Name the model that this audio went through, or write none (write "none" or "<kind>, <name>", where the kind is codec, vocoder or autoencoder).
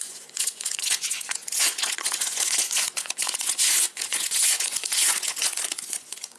vocoder, Vocos